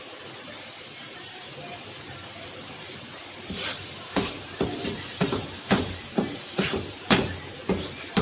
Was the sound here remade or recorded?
remade